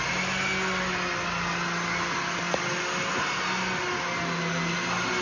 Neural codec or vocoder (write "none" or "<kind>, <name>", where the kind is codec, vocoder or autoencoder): none